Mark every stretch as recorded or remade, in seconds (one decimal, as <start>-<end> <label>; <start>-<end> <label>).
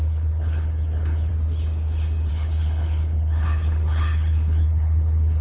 0.0-1.3 remade; 1.3-2.3 recorded; 2.3-5.4 remade